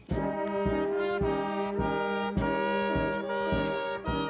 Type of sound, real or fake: real